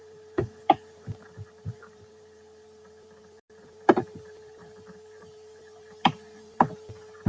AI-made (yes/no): yes